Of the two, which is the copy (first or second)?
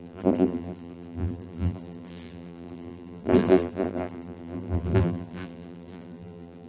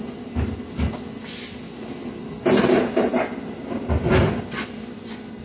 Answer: first